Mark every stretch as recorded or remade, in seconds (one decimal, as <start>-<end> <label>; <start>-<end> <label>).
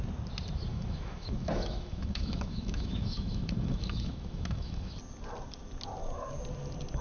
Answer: 0.0-0.7 recorded; 0.7-4.9 remade; 4.9-7.0 recorded